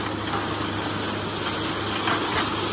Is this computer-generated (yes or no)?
no